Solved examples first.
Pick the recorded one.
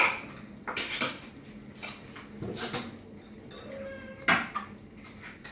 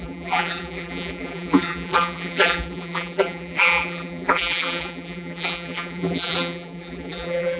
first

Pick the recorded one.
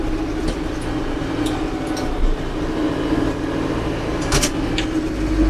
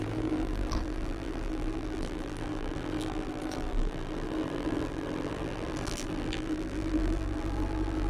first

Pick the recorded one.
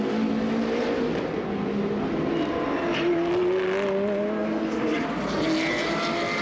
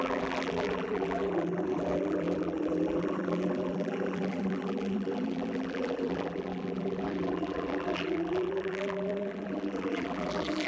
first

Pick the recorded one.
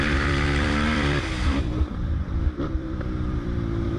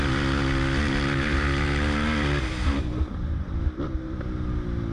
second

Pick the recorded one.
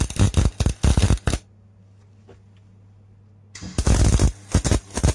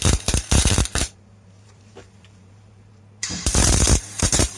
first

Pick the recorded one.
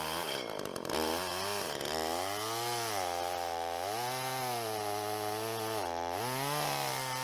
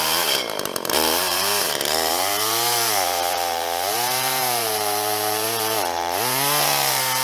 first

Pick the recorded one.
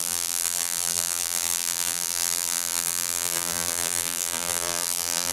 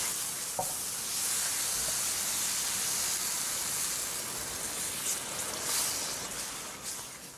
second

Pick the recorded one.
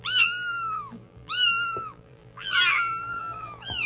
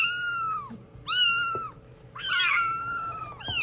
second